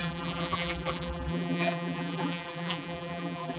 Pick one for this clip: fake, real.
fake